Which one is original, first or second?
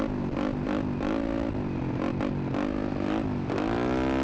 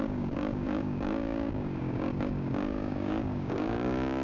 first